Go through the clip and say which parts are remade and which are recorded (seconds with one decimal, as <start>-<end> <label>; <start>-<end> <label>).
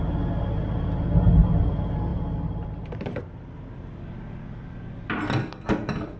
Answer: 0.0-6.2 recorded